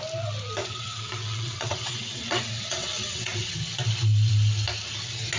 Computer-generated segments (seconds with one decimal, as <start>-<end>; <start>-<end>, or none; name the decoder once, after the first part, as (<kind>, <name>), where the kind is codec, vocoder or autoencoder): 0.6-3.5 (vocoder, WaveNeXt)